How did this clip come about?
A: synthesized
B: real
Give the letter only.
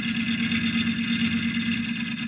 B